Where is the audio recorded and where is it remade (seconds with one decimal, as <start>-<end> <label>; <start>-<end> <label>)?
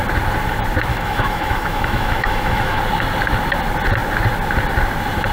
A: 0.0-0.9 recorded; 0.9-2.8 remade; 2.8-5.3 recorded